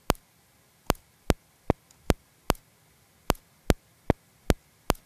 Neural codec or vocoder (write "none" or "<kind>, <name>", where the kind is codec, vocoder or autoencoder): none